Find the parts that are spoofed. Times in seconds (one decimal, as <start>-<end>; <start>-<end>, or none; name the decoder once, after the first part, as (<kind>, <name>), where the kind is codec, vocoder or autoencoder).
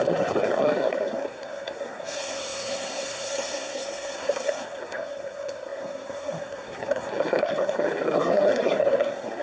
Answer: 0.0-9.4 (codec, SNAC)